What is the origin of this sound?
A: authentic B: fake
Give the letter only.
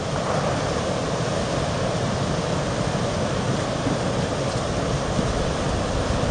A